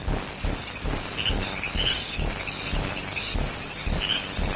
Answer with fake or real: real